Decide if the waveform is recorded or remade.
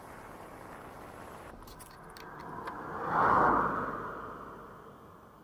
recorded